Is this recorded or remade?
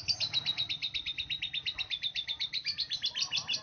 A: recorded